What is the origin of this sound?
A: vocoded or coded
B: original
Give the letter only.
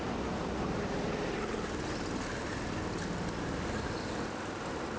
B